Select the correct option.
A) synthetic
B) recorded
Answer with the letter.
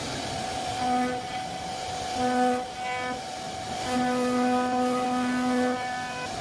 B